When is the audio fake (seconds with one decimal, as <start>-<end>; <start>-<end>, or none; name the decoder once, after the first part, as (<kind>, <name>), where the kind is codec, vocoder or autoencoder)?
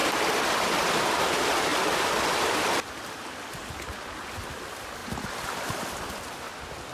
0.0-0.9 (vocoder, BigVGAN v2); 1.7-4.6; 5.0-5.5